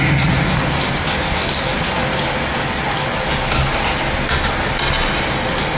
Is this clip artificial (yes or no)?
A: no